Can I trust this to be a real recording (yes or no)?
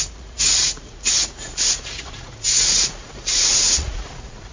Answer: no